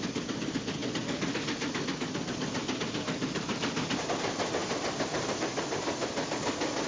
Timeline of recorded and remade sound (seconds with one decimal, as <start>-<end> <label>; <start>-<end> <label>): 0.0-6.9 recorded